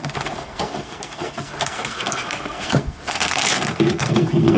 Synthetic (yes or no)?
yes